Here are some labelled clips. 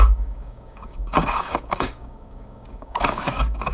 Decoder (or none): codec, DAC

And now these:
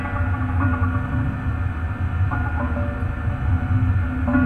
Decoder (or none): none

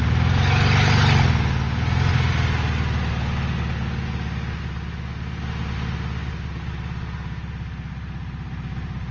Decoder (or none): none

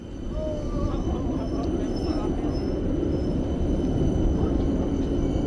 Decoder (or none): none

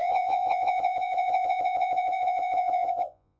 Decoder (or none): vocoder, Vocos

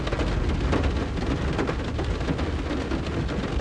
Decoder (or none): none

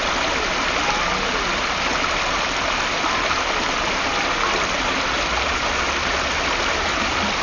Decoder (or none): none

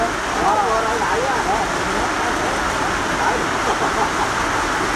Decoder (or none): none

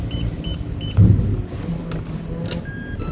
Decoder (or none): none